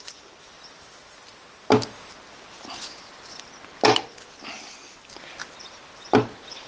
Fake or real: real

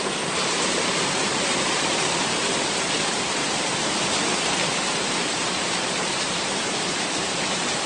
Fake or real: fake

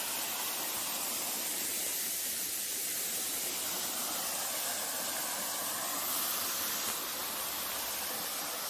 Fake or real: real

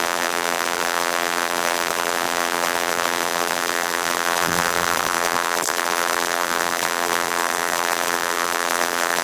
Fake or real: fake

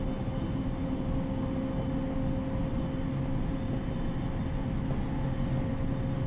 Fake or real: real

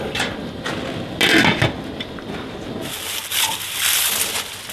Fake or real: real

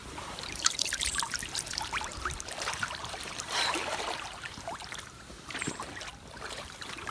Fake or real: fake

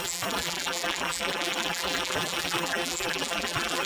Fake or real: fake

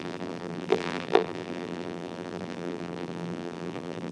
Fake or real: fake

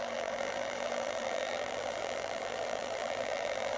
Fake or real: fake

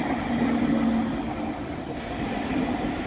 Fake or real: real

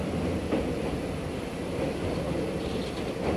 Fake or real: real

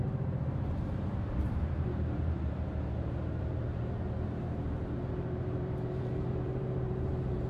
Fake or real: fake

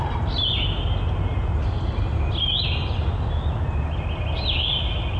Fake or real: real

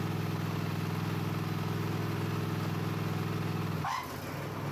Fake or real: real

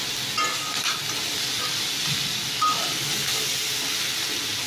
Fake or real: real